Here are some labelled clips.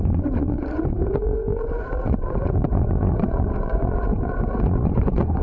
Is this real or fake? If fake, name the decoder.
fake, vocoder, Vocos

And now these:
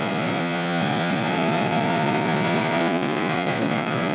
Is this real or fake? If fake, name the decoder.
fake, vocoder, Vocos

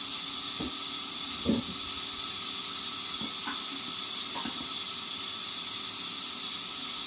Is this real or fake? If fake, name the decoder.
real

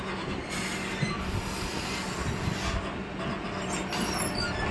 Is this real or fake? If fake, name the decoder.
real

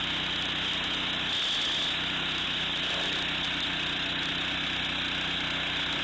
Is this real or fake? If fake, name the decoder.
real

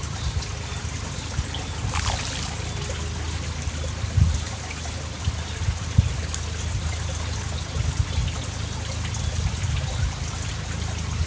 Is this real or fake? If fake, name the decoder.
real